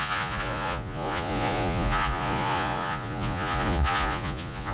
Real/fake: fake